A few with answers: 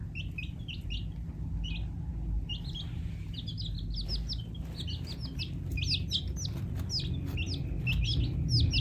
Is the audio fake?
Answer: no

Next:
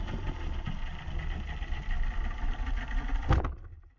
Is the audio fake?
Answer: no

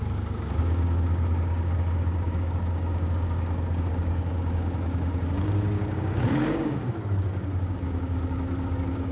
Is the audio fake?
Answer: yes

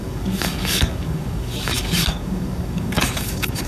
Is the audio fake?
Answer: yes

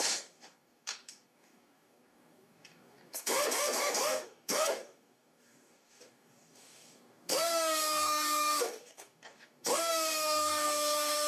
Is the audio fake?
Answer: yes